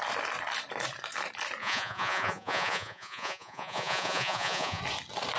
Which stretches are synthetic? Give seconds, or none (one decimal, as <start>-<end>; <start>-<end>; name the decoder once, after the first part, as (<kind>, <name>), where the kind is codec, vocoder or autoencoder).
1.6-4.8 (vocoder, Vocos)